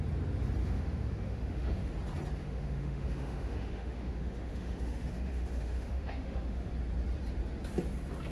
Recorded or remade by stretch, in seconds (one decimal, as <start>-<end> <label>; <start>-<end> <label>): 0.0-0.6 recorded; 0.6-1.9 remade; 1.9-2.4 recorded; 2.4-6.7 remade; 6.7-8.3 recorded